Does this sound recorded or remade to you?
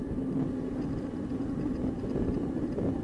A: recorded